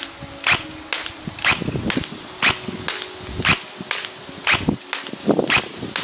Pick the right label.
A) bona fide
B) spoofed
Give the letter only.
A